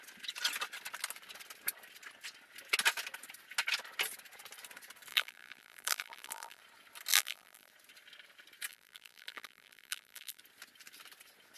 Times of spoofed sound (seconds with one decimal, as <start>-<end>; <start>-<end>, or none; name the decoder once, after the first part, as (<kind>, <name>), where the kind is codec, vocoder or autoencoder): 5.1-6.6 (vocoder, BigVGAN v2); 7.1-7.7; 8.7-10.4